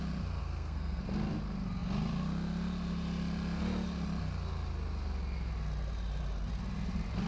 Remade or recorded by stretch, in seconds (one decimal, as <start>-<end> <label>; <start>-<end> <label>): 0.0-0.4 recorded; 0.4-1.0 remade; 1.0-7.3 recorded